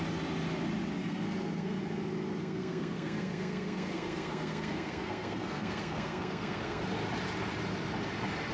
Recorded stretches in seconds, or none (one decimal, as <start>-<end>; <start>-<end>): 0.0-1.0; 1.8-2.4; 6.8-8.5